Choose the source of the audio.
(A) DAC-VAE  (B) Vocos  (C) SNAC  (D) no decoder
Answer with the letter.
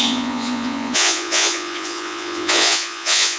B